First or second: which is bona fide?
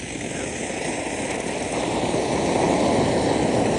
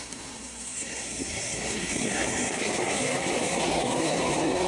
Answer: first